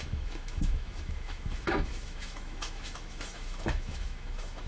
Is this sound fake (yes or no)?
yes